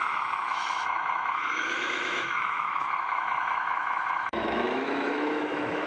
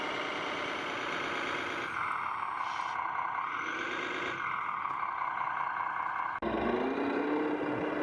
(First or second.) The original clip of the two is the second